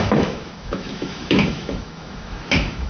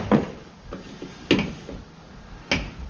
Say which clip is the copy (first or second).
first